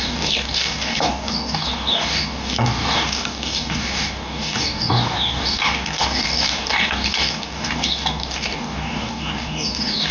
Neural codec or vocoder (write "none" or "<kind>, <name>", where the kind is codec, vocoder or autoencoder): codec, DAC